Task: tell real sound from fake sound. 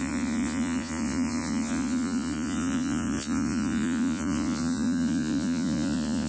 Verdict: fake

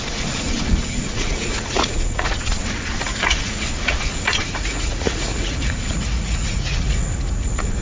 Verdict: fake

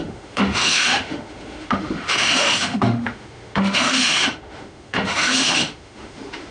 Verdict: fake